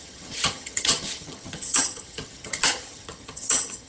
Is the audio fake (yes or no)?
yes